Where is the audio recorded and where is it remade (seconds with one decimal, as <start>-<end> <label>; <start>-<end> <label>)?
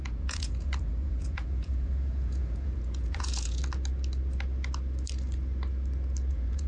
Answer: 0.0-3.6 remade; 3.6-6.3 recorded; 6.3-6.7 remade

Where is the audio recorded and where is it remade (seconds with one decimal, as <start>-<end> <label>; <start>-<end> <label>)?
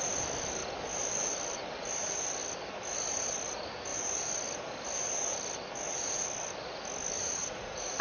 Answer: 0.0-7.4 recorded; 7.4-8.0 remade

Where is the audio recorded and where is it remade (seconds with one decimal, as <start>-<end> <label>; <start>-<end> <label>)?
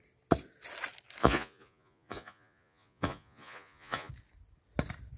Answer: 0.0-1.2 recorded; 1.2-4.1 remade; 4.1-5.2 recorded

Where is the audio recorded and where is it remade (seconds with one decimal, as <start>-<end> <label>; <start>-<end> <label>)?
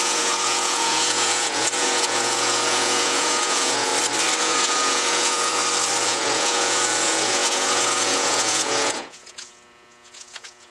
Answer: 0.0-3.9 remade; 3.9-4.4 recorded; 4.4-5.6 remade; 5.6-6.1 recorded; 6.1-10.7 remade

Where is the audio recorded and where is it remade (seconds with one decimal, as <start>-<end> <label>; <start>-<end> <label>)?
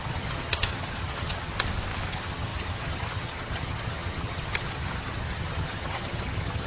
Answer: 0.0-1.5 remade; 1.5-2.1 recorded; 2.1-6.7 remade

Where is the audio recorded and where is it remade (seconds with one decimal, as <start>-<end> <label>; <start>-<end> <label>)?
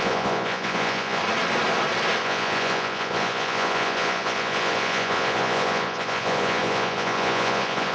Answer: 0.0-1.2 remade; 1.2-2.2 recorded; 2.2-7.9 remade